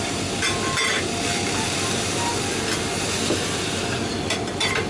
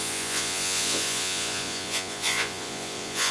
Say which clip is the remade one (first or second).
second